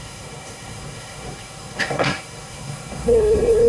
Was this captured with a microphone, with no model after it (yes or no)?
no